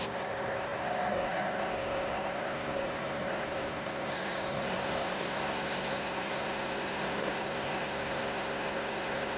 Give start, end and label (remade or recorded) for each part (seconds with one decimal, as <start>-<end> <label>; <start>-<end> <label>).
0.0-9.4 remade